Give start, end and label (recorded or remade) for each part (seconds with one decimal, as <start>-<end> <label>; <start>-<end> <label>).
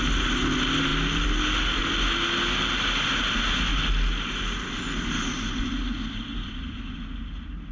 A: 0.0-6.3 recorded; 6.3-6.8 remade; 6.8-7.7 recorded